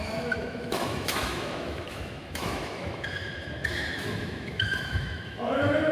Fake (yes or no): yes